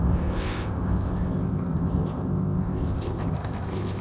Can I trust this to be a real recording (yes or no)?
no